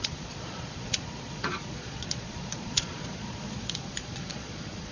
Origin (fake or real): fake